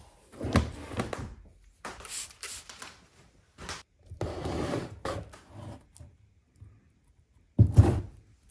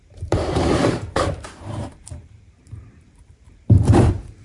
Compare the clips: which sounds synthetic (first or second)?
second